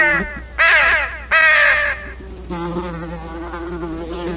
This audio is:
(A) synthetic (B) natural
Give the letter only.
B